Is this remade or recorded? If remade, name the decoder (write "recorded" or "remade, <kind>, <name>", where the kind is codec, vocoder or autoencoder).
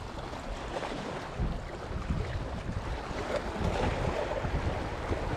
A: recorded